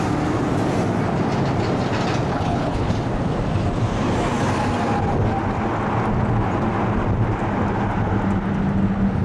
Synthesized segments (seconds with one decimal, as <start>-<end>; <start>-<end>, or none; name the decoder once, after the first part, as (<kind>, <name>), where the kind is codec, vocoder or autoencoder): 2.3-2.9 (codec, HILCodec)